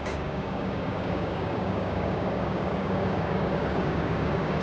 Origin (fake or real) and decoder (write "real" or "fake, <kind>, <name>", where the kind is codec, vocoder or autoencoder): fake, codec, DAC